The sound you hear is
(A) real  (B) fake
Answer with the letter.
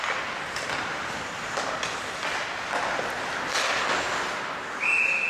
A